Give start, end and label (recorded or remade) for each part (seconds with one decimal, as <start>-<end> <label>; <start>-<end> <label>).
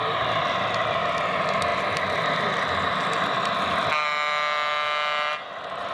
0.0-5.9 recorded